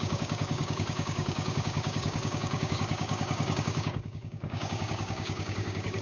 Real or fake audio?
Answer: fake